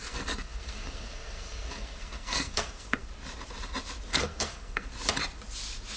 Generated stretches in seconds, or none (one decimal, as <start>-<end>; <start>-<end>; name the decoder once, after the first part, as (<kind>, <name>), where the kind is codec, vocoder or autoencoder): 0.0-3.1 (codec, SNAC); 4.1-4.9